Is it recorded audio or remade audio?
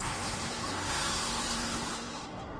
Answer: remade